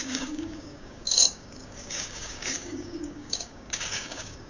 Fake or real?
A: fake